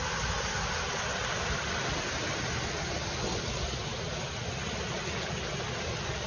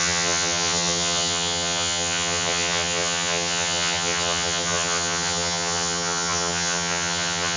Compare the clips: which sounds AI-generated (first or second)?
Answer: second